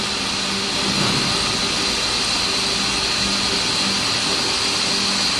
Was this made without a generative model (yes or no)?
yes